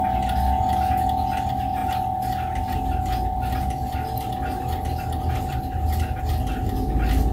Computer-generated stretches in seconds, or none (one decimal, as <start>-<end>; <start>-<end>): none

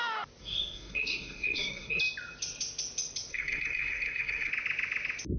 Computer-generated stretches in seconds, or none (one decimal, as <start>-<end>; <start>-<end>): 0.4-2.0; 3.3-4.5